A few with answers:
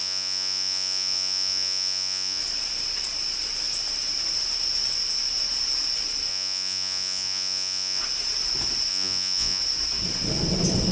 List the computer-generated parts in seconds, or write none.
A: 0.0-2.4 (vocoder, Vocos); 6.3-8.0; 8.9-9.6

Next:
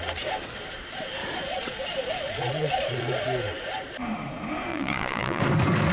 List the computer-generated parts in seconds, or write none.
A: 1.2-3.2 (vocoder, Vocos); 4.7-5.4

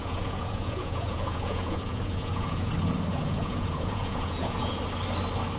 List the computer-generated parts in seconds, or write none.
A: 0.0-2.7 (vocoder, Vocos); 3.1-4.8

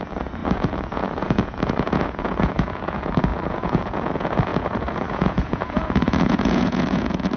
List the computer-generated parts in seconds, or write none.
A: 0.0-7.4 (vocoder, Vocos)

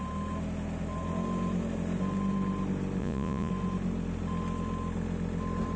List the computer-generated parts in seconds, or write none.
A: 3.0-3.5 (vocoder, Vocos)